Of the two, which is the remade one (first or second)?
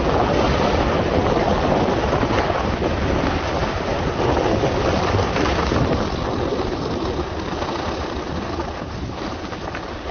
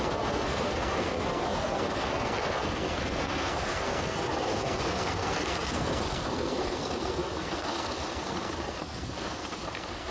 second